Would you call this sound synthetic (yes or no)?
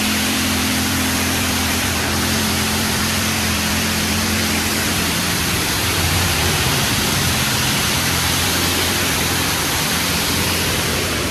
yes